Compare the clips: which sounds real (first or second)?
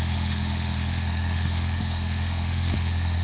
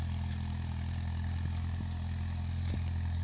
second